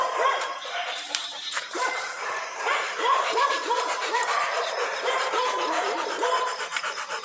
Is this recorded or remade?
remade